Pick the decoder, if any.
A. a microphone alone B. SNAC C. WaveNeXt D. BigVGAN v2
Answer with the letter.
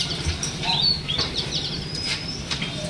D